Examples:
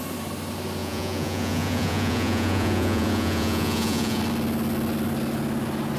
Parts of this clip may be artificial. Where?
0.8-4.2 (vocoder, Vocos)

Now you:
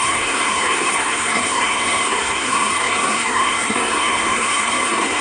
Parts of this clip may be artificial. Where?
0.0-5.2 (codec, SNAC)